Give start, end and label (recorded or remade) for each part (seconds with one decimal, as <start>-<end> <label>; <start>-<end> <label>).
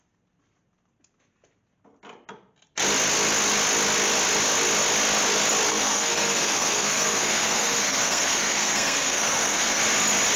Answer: 0.0-5.7 recorded; 5.7-9.8 remade; 9.8-10.4 recorded